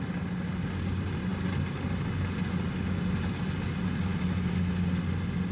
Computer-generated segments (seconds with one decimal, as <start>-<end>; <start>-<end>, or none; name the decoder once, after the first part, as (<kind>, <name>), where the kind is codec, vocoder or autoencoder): none